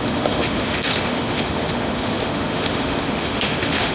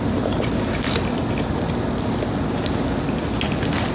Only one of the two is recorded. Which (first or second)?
second